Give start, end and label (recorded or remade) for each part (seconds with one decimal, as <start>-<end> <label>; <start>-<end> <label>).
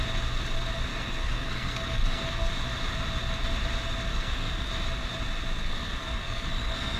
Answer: 0.0-0.9 recorded; 0.9-2.5 remade; 2.5-4.1 recorded; 4.1-4.7 remade; 4.7-5.6 recorded; 5.6-7.0 remade